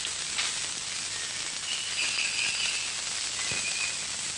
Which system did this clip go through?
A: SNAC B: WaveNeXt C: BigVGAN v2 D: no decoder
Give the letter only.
D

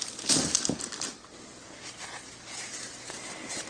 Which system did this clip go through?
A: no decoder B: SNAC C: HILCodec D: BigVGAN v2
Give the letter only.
D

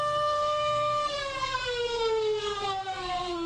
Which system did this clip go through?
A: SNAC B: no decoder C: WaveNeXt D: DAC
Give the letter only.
A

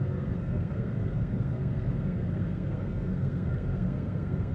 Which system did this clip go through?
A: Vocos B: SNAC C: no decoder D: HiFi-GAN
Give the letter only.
B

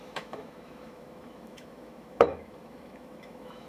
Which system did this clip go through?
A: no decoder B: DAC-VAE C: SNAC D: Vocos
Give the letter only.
B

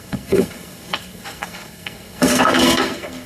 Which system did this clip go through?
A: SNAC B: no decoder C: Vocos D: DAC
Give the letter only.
A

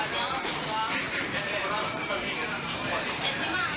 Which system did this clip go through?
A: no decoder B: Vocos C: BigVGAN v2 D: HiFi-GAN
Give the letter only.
C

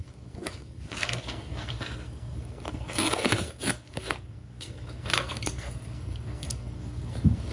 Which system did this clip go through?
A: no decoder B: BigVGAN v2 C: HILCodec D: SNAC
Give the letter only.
D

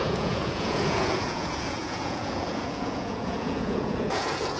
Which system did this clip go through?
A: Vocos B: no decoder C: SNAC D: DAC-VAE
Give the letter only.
A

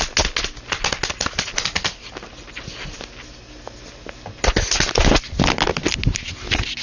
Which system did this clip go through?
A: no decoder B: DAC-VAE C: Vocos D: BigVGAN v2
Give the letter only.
A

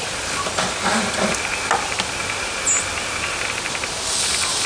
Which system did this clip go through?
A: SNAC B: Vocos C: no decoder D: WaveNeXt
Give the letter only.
C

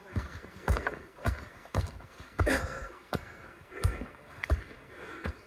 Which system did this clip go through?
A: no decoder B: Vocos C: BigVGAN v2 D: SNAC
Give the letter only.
D